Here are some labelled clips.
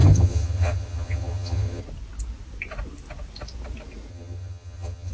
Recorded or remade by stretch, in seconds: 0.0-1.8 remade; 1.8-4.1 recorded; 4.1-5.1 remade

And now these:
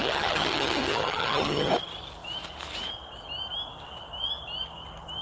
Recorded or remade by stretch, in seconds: 0.0-1.7 remade; 1.7-5.2 recorded

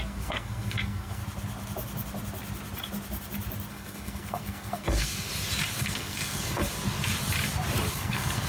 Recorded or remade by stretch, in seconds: 0.0-1.2 remade; 1.2-3.7 recorded; 3.7-5.3 remade; 5.3-5.8 recorded; 5.8-6.6 remade; 6.6-7.9 recorded; 7.9-8.5 remade

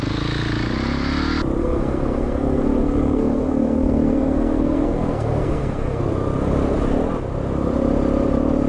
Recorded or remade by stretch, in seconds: 0.0-1.6 recorded; 1.6-6.0 remade; 6.0-8.7 recorded

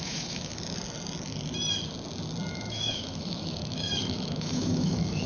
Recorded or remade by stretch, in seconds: 0.0-0.5 remade; 0.5-2.5 recorded; 2.5-5.3 remade